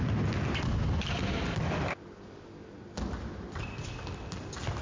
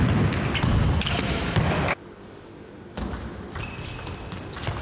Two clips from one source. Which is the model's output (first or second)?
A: second